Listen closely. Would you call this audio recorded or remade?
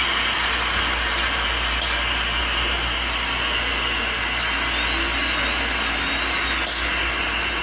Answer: recorded